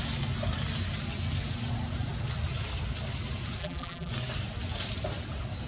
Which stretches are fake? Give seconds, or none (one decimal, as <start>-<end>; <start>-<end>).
3.6-4.1